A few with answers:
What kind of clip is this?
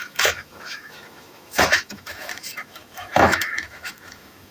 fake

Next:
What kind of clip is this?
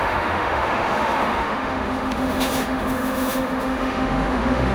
fake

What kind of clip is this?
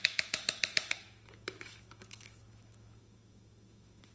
fake